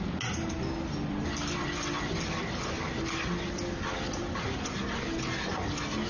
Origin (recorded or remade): recorded